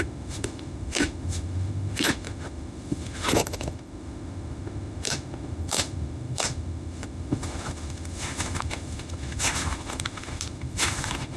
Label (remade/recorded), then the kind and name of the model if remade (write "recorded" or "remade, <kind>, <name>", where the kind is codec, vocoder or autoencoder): remade, autoencoder, DAC-VAE